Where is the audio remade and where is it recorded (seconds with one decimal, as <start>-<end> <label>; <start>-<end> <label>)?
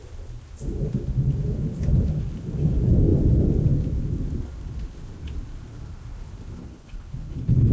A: 0.0-6.6 recorded; 6.6-7.7 remade